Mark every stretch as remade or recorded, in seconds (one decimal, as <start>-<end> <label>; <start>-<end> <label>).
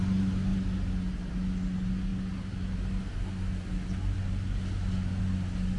0.0-5.8 recorded